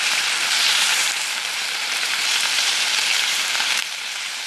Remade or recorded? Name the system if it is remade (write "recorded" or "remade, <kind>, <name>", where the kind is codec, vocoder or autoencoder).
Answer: remade, vocoder, BigVGAN v2